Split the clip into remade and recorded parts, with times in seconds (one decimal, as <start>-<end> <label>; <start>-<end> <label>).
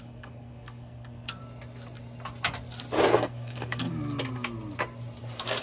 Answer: 0.0-1.4 remade; 1.4-3.1 recorded; 3.1-3.9 remade; 3.9-5.6 recorded